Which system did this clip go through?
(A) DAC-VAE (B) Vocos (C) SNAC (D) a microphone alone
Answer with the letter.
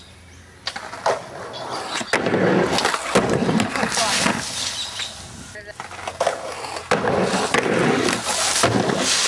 D